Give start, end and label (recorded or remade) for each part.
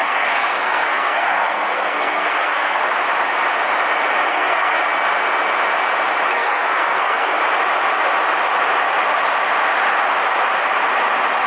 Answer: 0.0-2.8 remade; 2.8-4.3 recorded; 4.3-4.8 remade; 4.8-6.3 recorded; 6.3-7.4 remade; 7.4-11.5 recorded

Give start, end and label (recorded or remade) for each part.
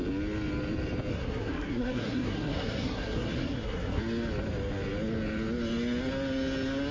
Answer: 0.0-1.1 recorded; 1.1-4.0 remade; 4.0-6.9 recorded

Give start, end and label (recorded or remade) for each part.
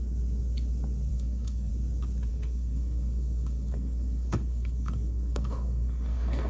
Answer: 0.0-1.1 recorded; 1.1-1.7 remade; 1.7-2.3 recorded; 2.3-6.5 remade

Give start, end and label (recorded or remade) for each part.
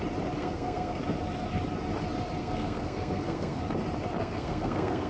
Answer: 0.0-0.4 recorded; 0.4-1.0 remade; 1.0-2.4 recorded; 2.4-3.6 remade; 3.6-4.2 recorded; 4.2-5.1 remade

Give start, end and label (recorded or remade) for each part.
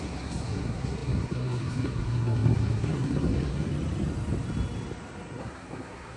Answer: 0.0-3.7 remade; 3.7-5.4 recorded; 5.4-6.2 remade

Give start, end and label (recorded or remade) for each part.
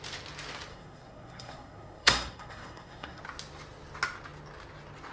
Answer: 0.0-0.7 recorded; 0.7-3.2 remade; 3.2-5.1 recorded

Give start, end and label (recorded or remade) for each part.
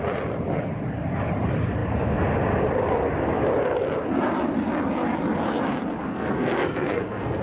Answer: 0.0-6.0 recorded; 6.0-7.4 remade